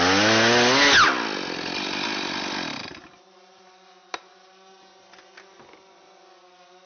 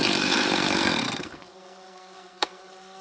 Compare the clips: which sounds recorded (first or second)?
first